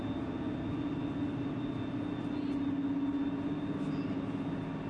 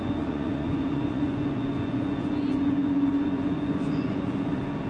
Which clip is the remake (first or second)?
second